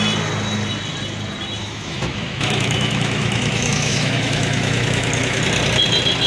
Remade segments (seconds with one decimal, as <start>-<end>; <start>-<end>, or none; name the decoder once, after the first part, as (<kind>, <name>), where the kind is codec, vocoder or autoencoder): 1.6-5.4 (autoencoder, DAC-VAE)